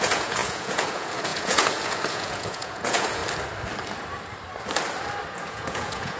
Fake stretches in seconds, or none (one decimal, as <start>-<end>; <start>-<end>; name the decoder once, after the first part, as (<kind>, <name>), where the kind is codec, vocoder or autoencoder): 0.0-3.2 (vocoder, Vocos); 5.3-6.2